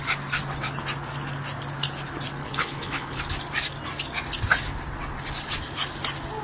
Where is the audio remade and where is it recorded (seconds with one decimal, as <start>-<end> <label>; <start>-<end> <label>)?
0.0-2.4 recorded; 2.4-3.2 remade; 3.2-6.4 recorded